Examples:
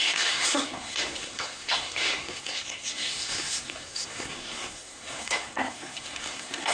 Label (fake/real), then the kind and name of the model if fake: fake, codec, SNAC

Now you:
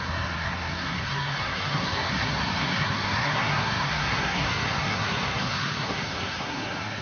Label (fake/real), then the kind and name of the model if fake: fake, codec, SNAC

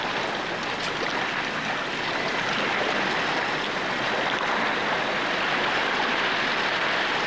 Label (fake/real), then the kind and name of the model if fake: real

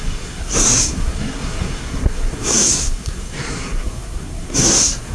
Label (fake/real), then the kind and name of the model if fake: fake, codec, SNAC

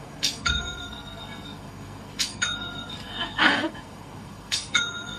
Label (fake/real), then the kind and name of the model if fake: fake, codec, SNAC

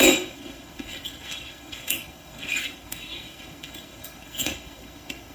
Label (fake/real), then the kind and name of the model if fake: fake, codec, SNAC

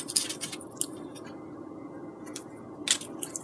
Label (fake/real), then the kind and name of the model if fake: real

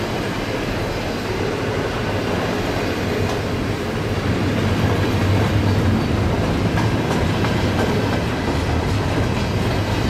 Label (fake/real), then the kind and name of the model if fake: real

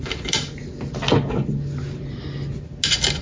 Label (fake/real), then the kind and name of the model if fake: real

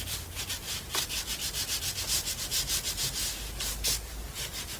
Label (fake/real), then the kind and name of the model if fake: real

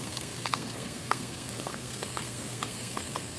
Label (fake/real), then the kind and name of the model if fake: fake, codec, SNAC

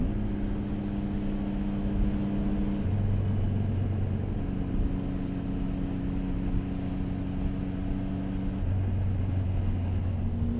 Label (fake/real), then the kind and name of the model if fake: real